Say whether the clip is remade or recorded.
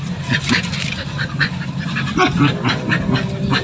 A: recorded